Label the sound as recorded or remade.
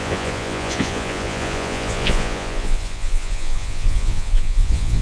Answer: remade